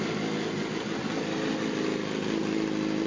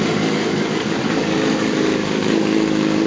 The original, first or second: first